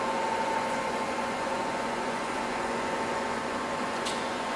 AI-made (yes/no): yes